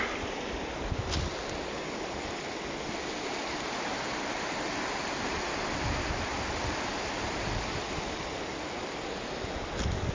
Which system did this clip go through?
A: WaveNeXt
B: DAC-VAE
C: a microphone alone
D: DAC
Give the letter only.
C